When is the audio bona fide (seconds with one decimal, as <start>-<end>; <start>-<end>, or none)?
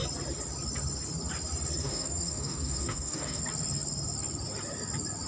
0.0-1.8; 3.4-5.3